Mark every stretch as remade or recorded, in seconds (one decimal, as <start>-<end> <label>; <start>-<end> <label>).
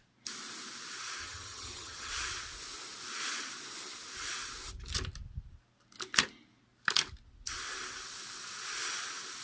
0.0-1.2 recorded; 1.2-2.1 remade; 2.1-9.4 recorded